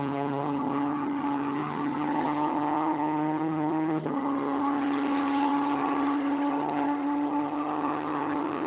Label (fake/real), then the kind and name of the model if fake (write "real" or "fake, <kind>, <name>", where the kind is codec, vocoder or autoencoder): fake, vocoder, HiFi-GAN